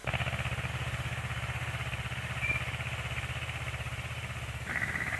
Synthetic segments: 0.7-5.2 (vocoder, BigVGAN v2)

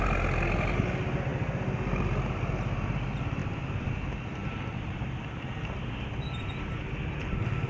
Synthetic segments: none

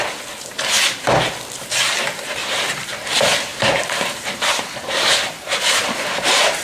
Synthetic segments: 2.4-3.1 (vocoder, BigVGAN v2); 3.5-6.1

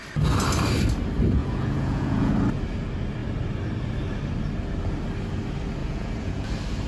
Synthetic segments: 1.4-2.3 (vocoder, Vocos); 5.8-6.5

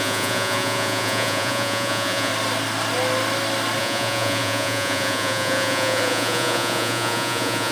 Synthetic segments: 0.0-2.3 (vocoder, Vocos); 3.8-7.7

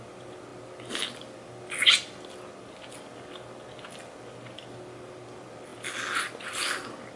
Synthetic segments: none

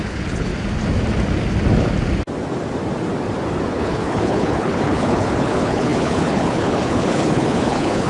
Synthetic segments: 0.0-0.5 (codec, HILCodec); 3.7-8.1

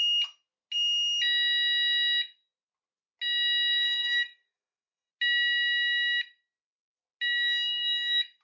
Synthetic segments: 3.7-5.1 (codec, DAC)